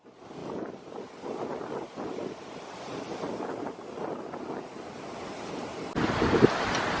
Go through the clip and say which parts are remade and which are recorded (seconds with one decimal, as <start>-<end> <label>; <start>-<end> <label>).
0.0-7.0 recorded